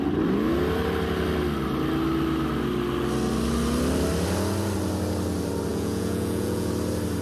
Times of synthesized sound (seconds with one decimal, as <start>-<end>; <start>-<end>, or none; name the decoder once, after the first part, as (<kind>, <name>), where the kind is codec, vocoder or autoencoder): 5.7-6.7 (vocoder, Vocos)